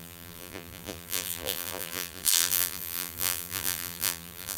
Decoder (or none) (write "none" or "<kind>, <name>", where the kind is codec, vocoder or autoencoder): vocoder, BigVGAN v2